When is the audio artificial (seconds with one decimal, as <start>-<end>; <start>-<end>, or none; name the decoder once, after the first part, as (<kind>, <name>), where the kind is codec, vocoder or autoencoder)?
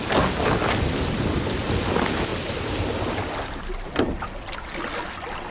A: none